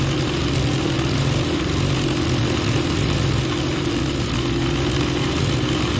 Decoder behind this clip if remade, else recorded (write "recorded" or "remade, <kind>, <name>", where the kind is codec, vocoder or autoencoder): recorded